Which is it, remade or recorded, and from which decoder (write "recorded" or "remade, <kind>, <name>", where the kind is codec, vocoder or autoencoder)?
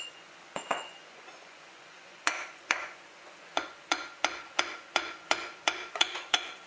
remade, vocoder, Vocos